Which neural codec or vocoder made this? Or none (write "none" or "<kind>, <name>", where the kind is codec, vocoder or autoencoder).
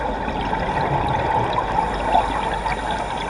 none